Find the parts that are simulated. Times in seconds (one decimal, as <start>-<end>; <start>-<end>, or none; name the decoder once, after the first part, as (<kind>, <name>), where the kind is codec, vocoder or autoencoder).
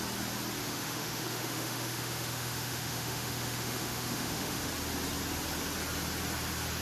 0.6-4.7 (autoencoder, DAC-VAE)